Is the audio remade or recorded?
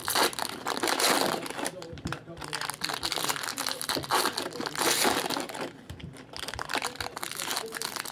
remade